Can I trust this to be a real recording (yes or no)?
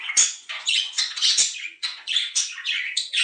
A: no